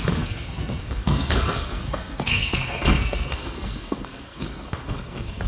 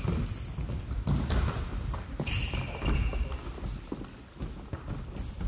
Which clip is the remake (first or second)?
first